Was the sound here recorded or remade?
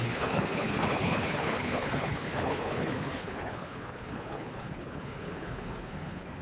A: remade